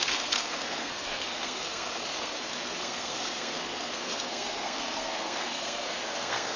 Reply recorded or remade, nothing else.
remade